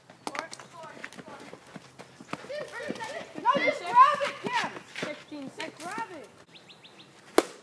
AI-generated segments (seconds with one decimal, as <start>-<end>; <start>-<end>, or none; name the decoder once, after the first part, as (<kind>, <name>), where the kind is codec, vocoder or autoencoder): none